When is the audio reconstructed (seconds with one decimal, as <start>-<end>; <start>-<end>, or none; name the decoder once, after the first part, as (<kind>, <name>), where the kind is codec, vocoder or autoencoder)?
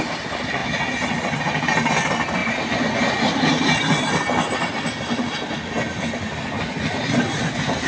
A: none